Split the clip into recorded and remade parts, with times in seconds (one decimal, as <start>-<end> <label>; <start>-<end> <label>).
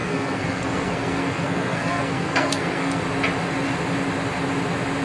0.0-3.0 remade; 3.0-5.0 recorded